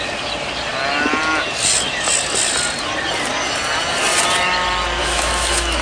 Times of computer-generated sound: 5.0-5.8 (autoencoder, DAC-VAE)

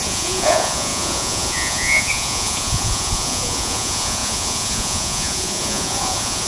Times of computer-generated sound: 0.0-6.5 (vocoder, Vocos)

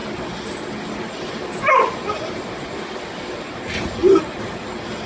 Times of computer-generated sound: none

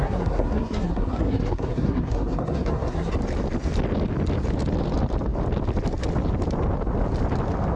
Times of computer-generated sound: 0.0-3.1 (codec, SNAC)

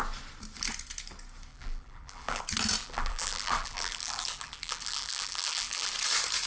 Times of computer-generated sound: 1.5-2.4 (vocoder, BigVGAN v2); 2.8-5.9